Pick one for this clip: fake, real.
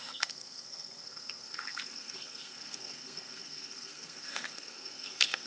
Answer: fake